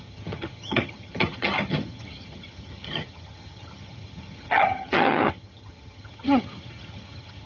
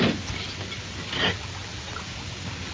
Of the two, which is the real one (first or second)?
second